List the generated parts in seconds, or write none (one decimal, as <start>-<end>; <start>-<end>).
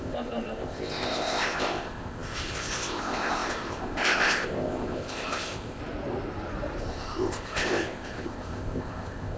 0.0-5.8; 6.8-9.4